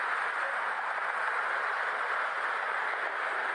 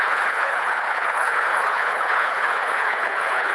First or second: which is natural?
first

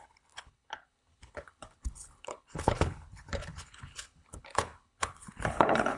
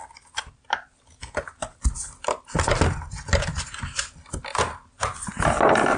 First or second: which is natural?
second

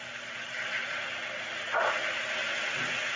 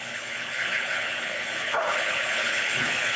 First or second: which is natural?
first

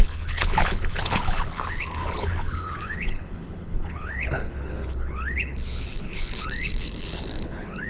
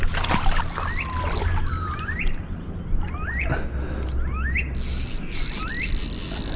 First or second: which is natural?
second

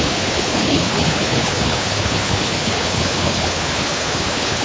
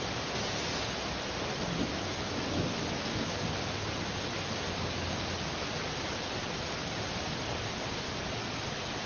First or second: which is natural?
second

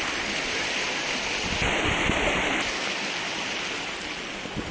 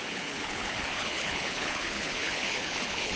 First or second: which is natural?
first